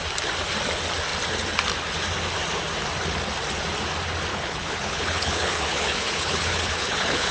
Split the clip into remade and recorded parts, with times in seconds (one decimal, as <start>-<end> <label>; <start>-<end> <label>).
0.0-4.3 recorded; 4.3-7.3 remade